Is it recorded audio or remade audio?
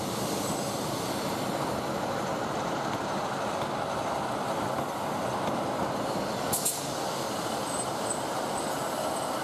recorded